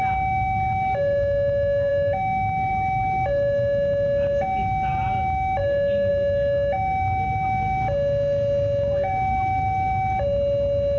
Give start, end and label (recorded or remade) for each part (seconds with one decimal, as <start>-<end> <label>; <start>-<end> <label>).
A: 0.0-11.0 recorded